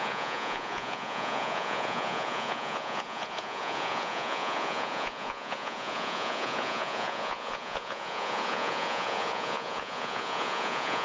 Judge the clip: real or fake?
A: fake